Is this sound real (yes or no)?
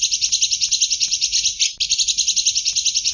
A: yes